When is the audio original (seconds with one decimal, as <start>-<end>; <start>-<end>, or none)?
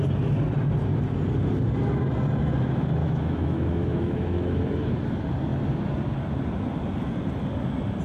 0.0-3.0; 4.6-8.0